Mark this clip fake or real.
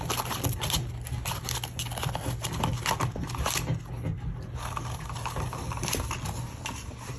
real